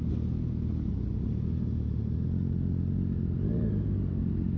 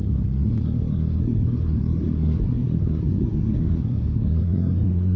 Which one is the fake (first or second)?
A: second